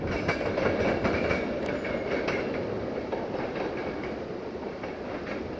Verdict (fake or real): real